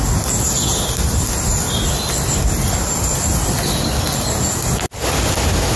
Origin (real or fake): real